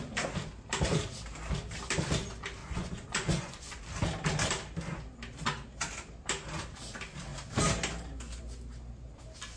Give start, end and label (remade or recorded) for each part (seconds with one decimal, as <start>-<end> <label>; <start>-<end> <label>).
0.0-2.6 recorded; 2.6-3.8 remade; 3.8-9.6 recorded